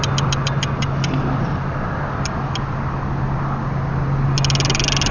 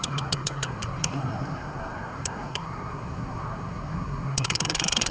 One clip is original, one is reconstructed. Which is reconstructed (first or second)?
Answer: second